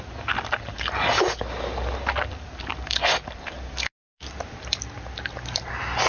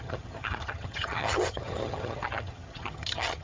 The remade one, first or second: second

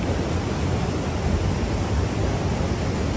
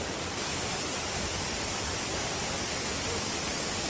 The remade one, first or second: second